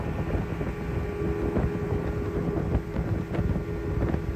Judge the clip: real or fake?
real